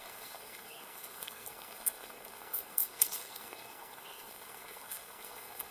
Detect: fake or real fake